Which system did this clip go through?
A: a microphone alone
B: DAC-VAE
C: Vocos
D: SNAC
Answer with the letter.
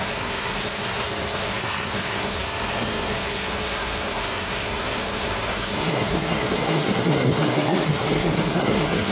D